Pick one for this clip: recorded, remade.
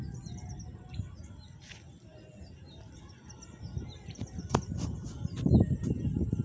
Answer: recorded